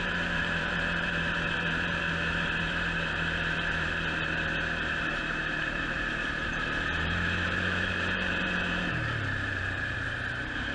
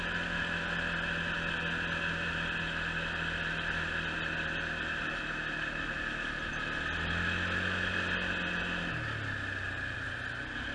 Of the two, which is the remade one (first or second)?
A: first